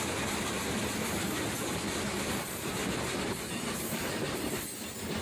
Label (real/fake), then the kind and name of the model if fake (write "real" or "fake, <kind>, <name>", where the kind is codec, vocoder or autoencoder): real